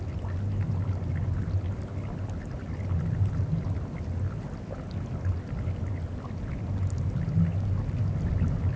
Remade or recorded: recorded